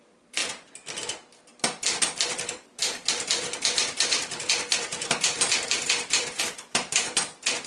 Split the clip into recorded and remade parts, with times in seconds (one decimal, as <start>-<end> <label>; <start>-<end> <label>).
0.0-0.4 remade; 0.4-2.0 recorded; 2.0-7.7 remade